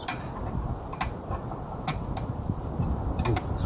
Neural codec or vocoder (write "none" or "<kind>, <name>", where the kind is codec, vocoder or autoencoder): none